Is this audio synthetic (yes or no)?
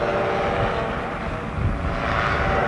no